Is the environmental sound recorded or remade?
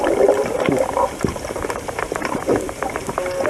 recorded